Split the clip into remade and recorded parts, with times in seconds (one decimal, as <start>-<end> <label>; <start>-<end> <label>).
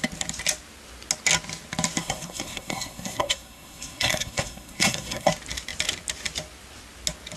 0.0-2.0 recorded; 2.0-5.3 remade; 5.3-7.4 recorded